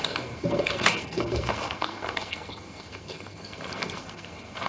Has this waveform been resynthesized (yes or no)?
yes